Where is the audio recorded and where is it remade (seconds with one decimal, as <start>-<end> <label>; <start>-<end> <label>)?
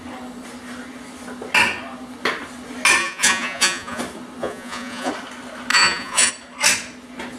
0.0-3.0 recorded; 3.0-4.0 remade; 4.0-4.4 recorded; 4.4-5.1 remade; 5.1-5.7 recorded; 5.7-6.3 remade; 6.3-7.4 recorded